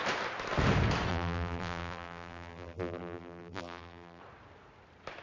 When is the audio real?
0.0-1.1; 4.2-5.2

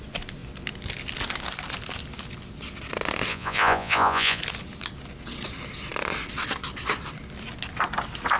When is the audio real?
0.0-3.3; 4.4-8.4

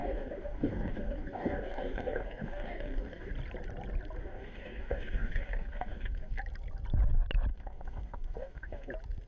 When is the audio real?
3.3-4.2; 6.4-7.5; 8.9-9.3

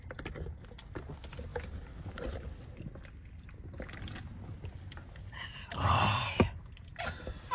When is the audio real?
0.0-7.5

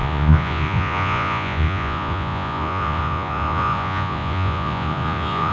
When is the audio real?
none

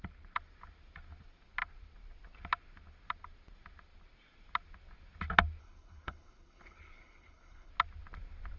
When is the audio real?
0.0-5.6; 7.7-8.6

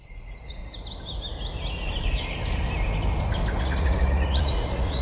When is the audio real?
0.6-3.6

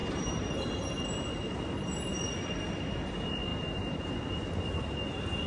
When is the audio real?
0.7-3.5; 4.1-5.5